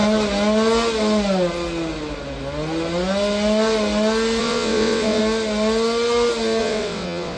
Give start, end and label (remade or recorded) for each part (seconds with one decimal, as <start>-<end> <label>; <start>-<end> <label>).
0.0-4.4 recorded; 4.4-5.2 remade; 5.2-6.6 recorded; 6.6-7.4 remade